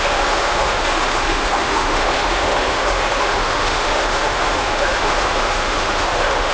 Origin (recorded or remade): remade